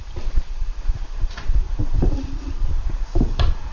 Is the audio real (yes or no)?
no